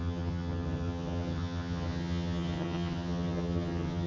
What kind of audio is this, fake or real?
fake